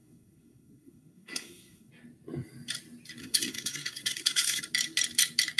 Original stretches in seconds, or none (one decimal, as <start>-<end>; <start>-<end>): 1.9-3.2; 4.6-5.6